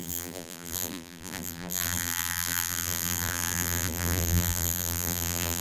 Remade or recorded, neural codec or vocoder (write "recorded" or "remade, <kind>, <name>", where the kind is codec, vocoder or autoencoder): remade, vocoder, BigVGAN v2